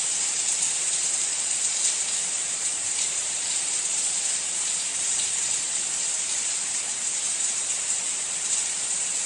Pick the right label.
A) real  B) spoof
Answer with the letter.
B